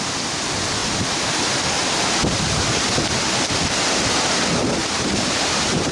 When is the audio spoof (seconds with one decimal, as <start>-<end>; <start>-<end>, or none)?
0.8-1.6; 4.8-5.9

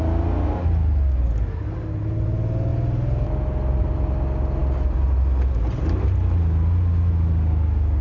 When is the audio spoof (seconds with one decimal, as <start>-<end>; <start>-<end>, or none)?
none